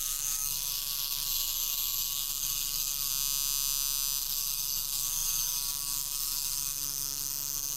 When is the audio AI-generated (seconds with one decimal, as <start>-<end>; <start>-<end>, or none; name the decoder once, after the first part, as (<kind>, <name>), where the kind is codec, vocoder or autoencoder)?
0.0-3.1 (codec, DAC); 4.2-7.8